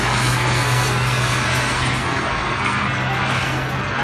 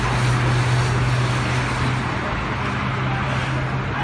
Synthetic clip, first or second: first